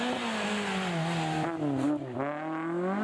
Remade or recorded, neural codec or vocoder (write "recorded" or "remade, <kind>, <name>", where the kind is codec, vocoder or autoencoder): recorded